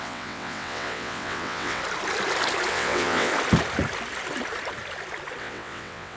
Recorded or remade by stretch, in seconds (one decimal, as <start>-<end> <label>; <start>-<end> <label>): 0.0-1.8 remade; 1.8-2.7 recorded; 2.7-3.3 remade; 3.3-5.4 recorded; 5.4-6.2 remade